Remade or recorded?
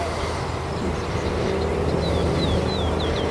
recorded